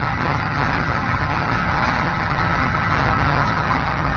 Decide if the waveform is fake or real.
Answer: fake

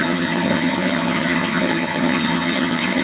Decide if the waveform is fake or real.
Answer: fake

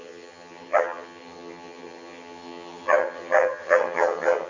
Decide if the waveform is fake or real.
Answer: fake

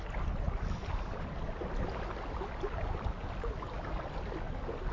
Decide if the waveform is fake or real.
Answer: real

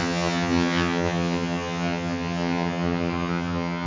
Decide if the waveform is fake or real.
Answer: fake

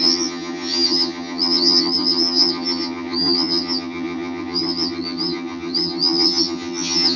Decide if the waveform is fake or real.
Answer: fake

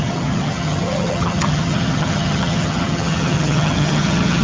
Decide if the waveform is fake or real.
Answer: fake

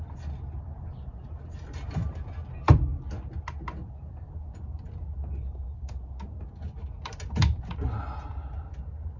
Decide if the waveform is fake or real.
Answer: real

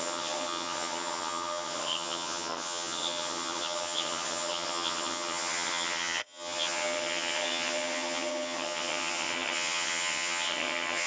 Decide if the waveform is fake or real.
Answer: fake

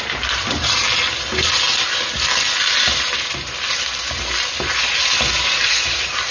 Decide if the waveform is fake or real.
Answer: real